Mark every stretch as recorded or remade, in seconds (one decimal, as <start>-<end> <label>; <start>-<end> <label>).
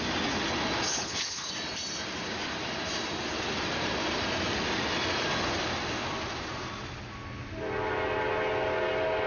0.0-0.9 recorded; 0.9-1.5 remade; 1.5-9.3 recorded